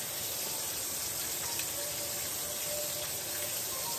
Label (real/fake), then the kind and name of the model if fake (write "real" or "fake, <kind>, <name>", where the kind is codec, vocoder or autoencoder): real